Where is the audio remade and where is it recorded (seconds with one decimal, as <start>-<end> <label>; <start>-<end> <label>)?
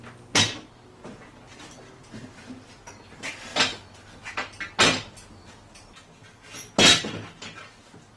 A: 0.0-8.2 recorded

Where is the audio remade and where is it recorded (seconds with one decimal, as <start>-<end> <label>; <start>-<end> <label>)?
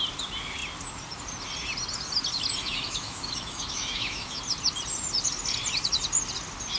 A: 0.0-2.6 recorded; 2.6-4.4 remade; 4.4-6.8 recorded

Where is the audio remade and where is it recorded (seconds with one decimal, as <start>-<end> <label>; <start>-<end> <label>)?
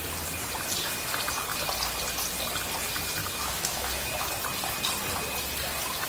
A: 0.0-3.2 recorded; 3.2-4.3 remade; 4.3-6.1 recorded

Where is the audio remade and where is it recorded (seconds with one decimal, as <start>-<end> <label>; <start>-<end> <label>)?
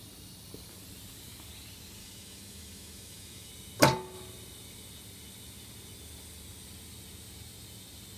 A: 0.0-2.0 recorded; 2.0-3.5 remade; 3.5-8.2 recorded